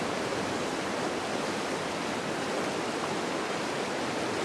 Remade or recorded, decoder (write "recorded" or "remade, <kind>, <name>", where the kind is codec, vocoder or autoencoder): recorded